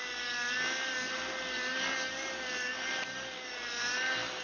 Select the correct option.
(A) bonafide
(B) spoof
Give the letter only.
A